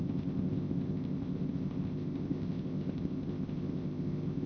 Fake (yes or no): yes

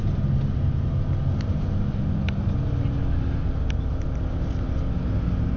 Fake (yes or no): no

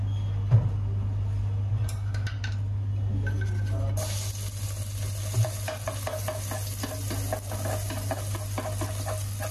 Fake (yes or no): no